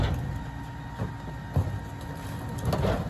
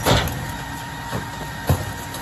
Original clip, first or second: first